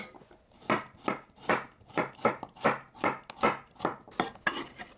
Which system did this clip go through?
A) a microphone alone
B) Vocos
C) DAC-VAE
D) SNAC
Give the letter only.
A